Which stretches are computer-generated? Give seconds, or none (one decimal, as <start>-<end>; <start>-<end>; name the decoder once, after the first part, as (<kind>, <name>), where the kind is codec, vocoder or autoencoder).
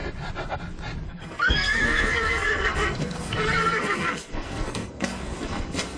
1.1-6.0 (codec, SNAC)